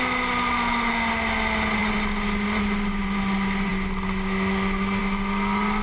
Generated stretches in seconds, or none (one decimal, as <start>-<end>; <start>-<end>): none